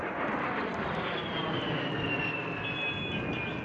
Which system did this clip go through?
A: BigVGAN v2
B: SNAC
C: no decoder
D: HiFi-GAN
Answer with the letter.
C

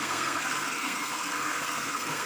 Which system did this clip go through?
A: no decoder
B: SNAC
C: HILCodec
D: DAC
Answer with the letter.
B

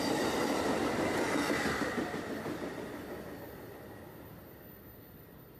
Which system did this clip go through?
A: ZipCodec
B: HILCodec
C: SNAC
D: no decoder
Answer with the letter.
D